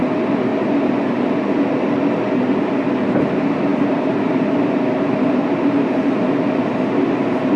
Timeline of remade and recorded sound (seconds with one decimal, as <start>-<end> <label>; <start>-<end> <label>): 0.0-7.6 recorded